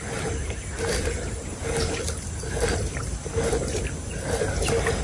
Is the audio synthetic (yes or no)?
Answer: no